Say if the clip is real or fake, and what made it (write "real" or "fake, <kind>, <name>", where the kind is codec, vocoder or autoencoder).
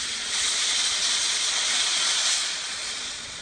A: fake, vocoder, Vocos